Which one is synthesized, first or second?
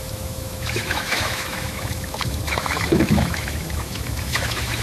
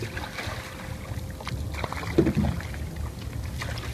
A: first